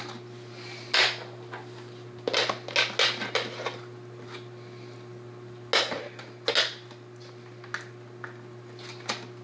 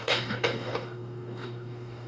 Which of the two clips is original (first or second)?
first